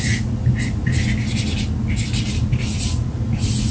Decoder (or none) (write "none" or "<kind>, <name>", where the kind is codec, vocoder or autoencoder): none